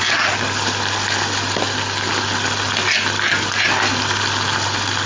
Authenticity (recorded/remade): recorded